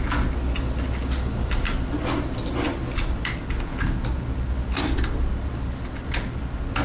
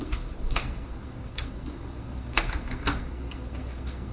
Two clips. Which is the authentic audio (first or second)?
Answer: first